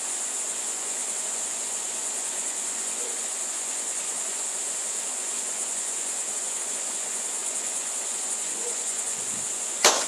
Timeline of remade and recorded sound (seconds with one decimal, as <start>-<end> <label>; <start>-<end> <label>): 0.0-10.1 remade